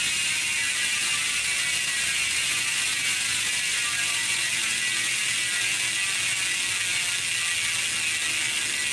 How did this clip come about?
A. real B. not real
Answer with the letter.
A